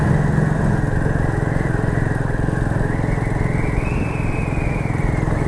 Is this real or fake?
real